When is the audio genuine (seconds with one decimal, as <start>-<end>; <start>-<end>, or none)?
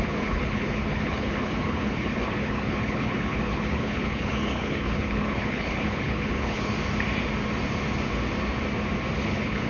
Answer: 6.7-9.2